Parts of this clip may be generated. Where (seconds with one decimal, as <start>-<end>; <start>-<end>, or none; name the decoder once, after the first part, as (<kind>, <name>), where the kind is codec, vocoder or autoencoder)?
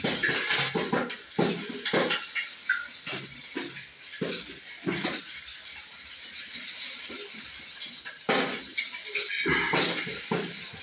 none